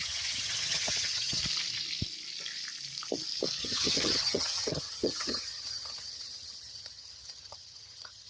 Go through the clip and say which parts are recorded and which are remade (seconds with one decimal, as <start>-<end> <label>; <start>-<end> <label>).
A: 0.0-1.4 remade; 1.4-3.6 recorded; 3.6-8.3 remade